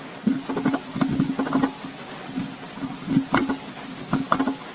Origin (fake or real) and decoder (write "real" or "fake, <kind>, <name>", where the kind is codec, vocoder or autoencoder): real